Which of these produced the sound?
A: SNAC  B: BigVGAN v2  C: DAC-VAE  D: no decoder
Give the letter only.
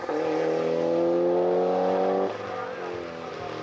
D